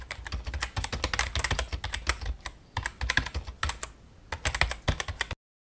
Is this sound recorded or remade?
recorded